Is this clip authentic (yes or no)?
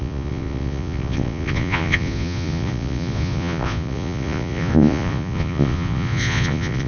no